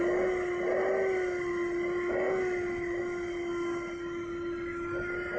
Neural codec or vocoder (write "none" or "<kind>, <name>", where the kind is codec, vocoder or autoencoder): none